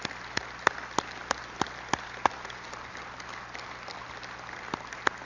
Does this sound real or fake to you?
real